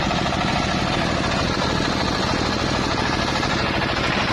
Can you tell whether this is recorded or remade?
recorded